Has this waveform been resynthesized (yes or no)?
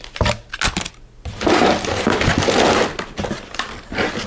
no